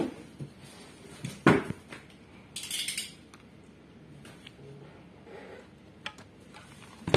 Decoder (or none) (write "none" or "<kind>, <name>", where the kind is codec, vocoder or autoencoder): none